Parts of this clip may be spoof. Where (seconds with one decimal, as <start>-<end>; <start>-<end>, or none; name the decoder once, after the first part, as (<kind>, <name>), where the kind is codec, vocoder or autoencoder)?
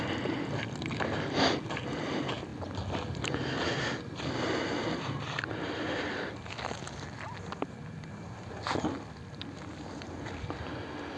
none